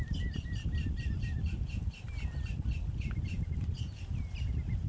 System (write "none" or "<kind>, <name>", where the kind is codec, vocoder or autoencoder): vocoder, BigVGAN v2